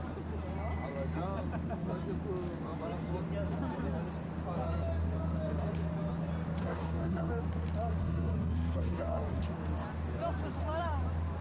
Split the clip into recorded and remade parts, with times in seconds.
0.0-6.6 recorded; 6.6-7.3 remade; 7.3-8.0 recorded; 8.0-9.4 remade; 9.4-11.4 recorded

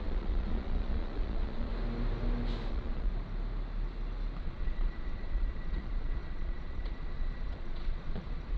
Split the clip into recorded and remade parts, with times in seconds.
0.0-1.7 remade; 1.7-2.7 recorded; 2.7-3.1 remade; 3.1-4.4 recorded; 4.4-8.6 remade

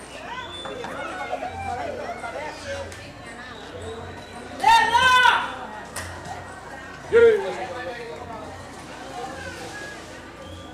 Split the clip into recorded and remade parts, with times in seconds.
0.0-7.2 recorded; 7.2-8.6 remade; 8.6-10.7 recorded

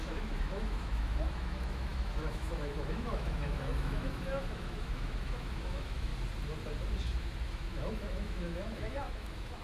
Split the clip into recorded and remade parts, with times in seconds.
0.0-6.1 remade; 6.1-7.0 recorded; 7.0-9.6 remade

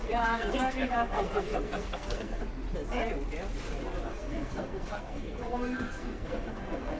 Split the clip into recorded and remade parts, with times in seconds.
0.0-2.4 remade; 2.4-4.1 recorded; 4.1-7.0 remade

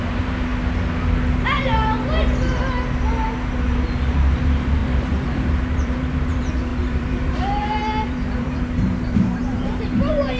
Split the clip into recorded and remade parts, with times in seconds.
0.0-0.5 remade; 0.5-3.6 recorded; 3.6-10.4 remade